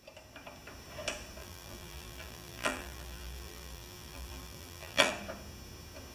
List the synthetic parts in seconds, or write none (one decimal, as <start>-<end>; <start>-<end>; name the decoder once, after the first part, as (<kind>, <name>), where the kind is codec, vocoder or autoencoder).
1.4-5.1 (vocoder, BigVGAN v2)